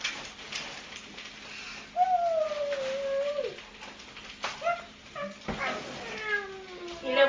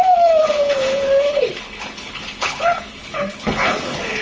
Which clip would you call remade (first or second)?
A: second